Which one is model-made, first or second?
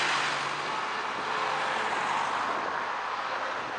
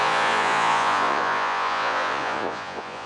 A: second